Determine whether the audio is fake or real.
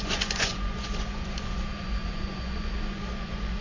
fake